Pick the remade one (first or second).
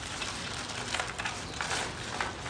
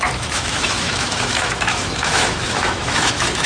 second